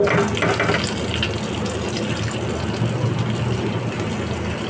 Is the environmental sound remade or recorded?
recorded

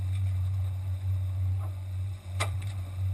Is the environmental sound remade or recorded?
remade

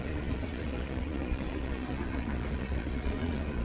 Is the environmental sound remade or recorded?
remade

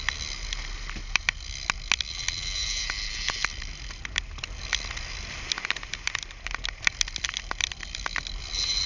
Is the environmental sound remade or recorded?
recorded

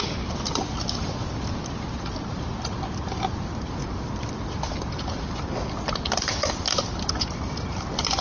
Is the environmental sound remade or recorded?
recorded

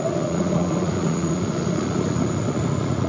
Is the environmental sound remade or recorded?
remade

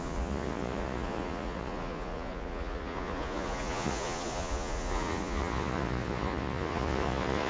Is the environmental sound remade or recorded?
remade